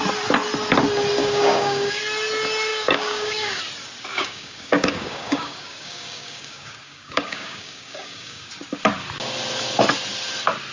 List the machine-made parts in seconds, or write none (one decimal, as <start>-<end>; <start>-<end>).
1.2-2.0; 2.7-3.6; 4.1-8.5